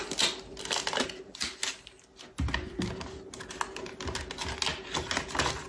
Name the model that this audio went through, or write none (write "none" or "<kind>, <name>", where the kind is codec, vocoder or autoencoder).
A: none